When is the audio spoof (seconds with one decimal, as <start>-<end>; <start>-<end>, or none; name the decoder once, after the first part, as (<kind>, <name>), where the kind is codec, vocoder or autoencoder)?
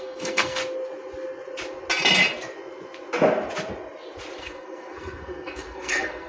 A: 0.0-0.6 (codec, SNAC); 4.4-6.3